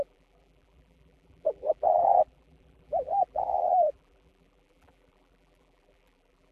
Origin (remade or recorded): remade